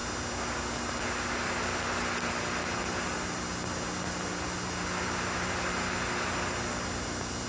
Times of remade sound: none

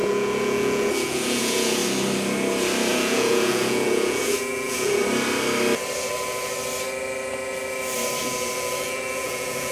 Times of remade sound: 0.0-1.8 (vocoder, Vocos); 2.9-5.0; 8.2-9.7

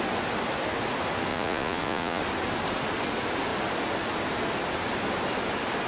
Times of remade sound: 1.3-2.2 (vocoder, Vocos)

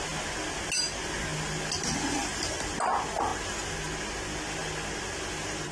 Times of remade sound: none

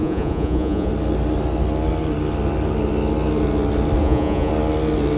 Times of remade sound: 0.0-0.9 (vocoder, Vocos); 4.0-4.5